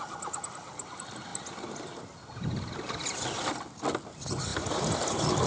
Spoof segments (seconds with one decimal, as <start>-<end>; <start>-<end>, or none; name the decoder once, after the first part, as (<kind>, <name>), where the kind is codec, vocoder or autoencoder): none